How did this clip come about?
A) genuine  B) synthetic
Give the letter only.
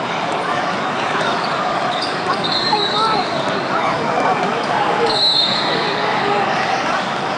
B